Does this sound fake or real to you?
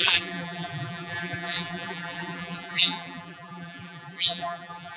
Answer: fake